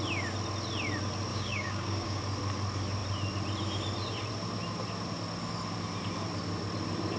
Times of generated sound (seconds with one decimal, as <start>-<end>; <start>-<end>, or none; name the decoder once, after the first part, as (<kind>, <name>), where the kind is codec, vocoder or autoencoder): 1.3-2.2 (codec, DAC)